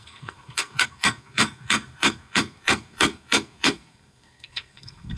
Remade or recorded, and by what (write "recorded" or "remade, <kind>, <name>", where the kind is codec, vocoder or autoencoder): remade, codec, SNAC